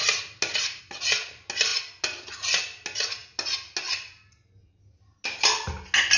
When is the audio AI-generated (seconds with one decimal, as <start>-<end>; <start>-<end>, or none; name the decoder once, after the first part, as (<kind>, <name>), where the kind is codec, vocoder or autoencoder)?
none